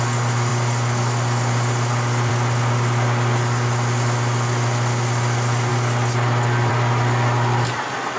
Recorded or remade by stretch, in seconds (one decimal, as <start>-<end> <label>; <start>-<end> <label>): 0.0-8.2 recorded